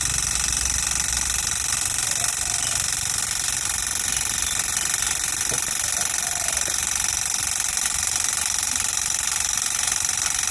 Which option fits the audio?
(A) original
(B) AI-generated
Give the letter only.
A